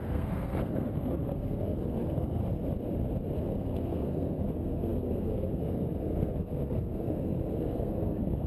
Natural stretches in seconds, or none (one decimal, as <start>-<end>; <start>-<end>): 2.4-3.4